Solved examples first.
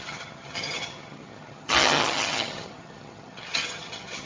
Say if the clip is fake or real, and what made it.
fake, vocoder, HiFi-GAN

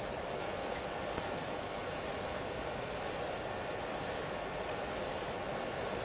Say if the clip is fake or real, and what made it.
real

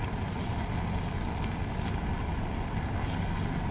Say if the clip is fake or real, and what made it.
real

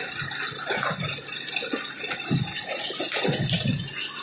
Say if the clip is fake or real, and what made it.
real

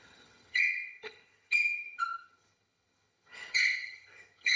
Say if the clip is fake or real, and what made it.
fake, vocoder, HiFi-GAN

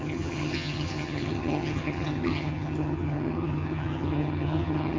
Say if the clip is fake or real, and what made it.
fake, vocoder, HiFi-GAN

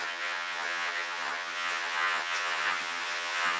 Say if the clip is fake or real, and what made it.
fake, vocoder, HiFi-GAN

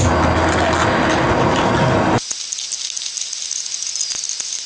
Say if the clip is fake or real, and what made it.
real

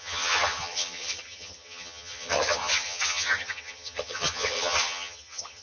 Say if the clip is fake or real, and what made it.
fake, vocoder, HiFi-GAN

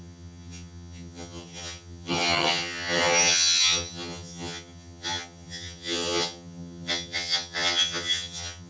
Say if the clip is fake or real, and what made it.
fake, vocoder, HiFi-GAN